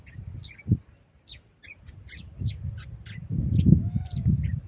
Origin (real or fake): real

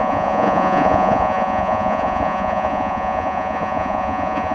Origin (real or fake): fake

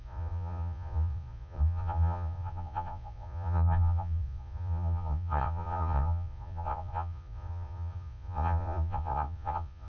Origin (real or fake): fake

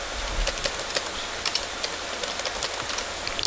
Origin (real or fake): real